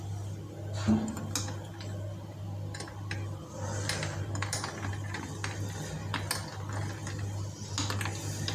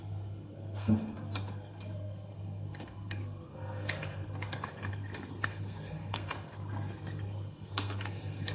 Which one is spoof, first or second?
second